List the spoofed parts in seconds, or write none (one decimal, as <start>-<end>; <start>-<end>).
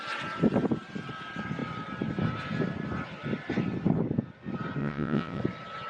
4.8-5.4